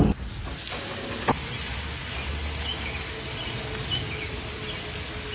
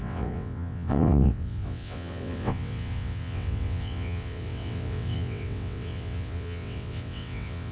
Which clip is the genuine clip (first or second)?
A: first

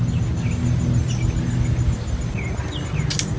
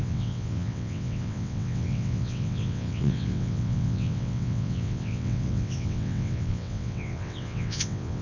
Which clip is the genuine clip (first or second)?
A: first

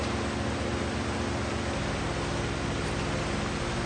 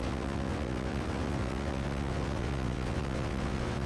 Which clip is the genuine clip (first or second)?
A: first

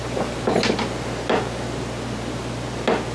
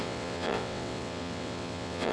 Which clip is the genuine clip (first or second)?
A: first